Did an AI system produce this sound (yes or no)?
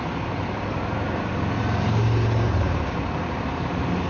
no